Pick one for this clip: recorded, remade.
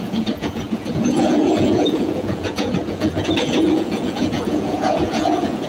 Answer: remade